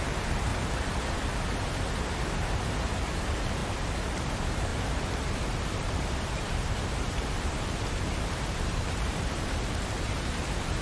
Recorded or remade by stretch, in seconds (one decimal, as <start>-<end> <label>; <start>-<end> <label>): 0.0-0.5 remade; 0.5-2.3 recorded; 2.3-3.6 remade; 3.6-4.2 recorded; 4.2-10.8 remade